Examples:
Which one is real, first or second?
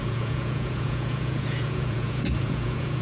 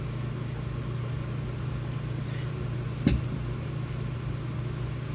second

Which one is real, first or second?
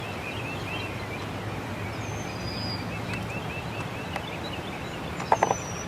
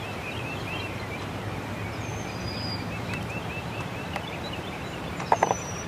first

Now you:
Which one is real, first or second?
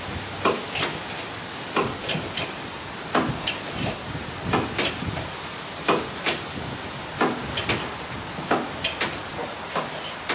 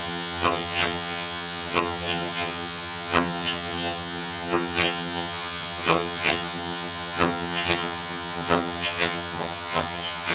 first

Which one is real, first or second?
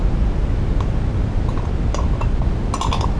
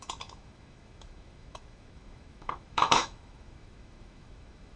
first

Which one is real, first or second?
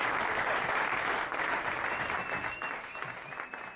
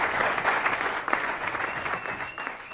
first